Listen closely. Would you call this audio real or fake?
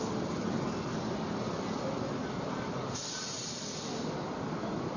real